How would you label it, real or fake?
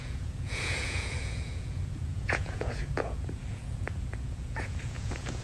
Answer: fake